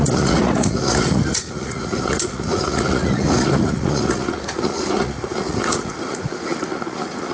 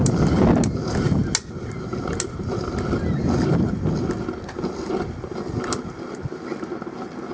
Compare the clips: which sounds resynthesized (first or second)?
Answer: first